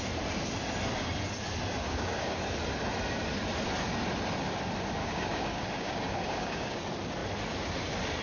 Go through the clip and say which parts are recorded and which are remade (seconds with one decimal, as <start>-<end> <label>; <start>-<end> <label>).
0.0-1.8 recorded; 1.8-2.4 remade; 2.4-5.0 recorded; 5.0-6.8 remade; 6.8-8.2 recorded